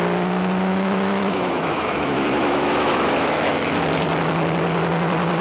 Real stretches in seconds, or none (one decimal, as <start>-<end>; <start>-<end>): 0.0-0.7; 3.8-5.4